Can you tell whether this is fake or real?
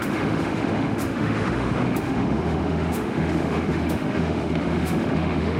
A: fake